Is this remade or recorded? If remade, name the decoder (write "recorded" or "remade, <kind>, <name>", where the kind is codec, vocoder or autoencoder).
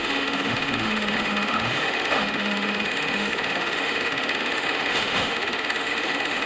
remade, autoencoder, DAC-VAE